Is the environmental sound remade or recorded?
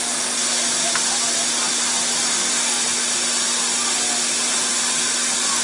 recorded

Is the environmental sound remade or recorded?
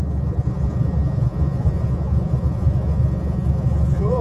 remade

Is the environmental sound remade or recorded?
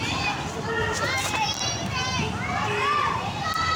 recorded